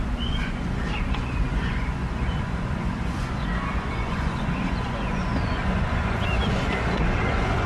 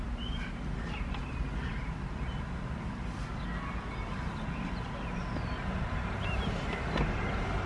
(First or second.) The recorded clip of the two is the second